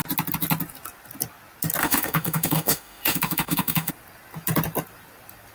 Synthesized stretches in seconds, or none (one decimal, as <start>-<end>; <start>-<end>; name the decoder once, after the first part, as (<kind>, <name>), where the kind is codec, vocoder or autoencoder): 1.8-3.9 (autoencoder, DAC-VAE)